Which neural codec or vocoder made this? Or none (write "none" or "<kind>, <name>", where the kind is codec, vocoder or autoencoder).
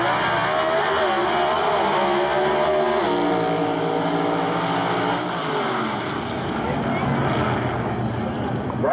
none